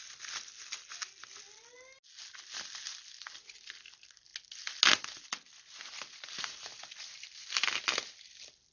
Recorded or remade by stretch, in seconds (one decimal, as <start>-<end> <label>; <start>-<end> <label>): 0.0-8.7 recorded